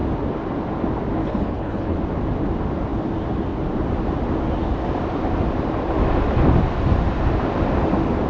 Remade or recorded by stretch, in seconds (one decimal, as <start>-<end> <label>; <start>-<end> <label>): 0.0-1.2 recorded; 1.2-2.0 remade; 2.0-8.3 recorded